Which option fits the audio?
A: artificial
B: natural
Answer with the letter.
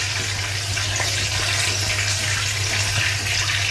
B